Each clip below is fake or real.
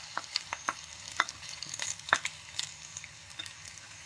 fake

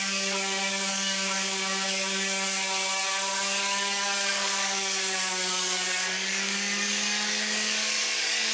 fake